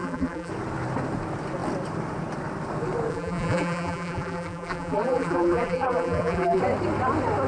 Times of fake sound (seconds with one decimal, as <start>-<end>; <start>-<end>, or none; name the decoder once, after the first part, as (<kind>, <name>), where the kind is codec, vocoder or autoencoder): 0.0-0.5 (vocoder, BigVGAN v2); 3.1-6.6

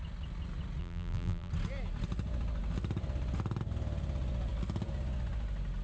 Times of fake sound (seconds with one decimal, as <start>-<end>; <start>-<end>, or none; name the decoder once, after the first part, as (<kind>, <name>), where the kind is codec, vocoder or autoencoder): 0.8-1.5 (vocoder, BigVGAN v2)

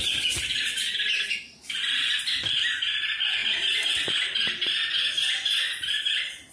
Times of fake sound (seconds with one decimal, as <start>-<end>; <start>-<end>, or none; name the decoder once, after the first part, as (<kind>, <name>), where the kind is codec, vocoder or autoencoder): none

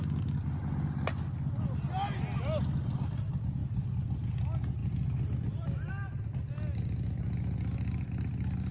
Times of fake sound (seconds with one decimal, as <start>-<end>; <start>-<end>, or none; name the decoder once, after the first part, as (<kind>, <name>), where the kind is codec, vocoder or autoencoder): 3.6-4.3 (vocoder, BigVGAN v2)